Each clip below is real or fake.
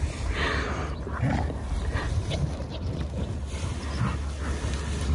real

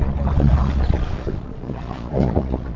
fake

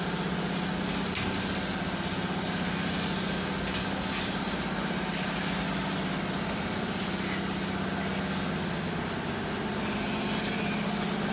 real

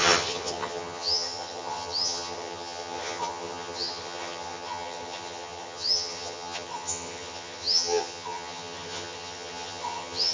fake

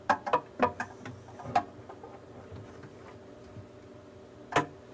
real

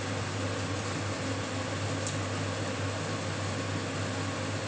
real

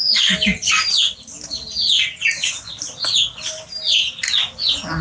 real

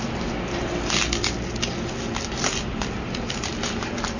real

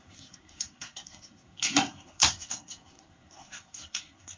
fake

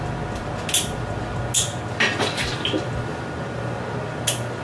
real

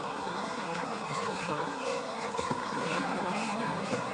fake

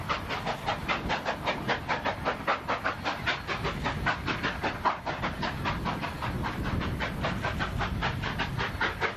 real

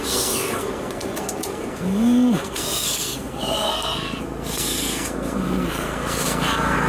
fake